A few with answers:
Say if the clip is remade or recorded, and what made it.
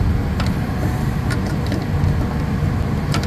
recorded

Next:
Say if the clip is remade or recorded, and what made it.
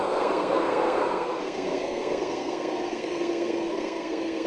remade, codec, SNAC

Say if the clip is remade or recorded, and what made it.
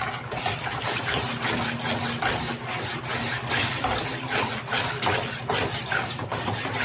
remade, vocoder, BigVGAN v2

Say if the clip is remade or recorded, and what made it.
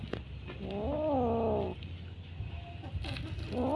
recorded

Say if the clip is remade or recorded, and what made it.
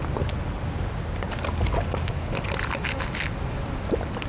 recorded